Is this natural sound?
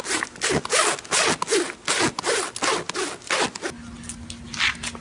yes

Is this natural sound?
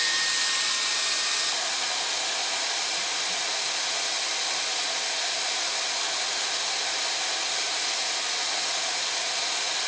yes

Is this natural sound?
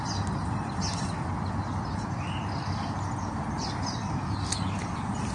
yes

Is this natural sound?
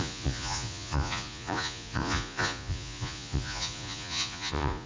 no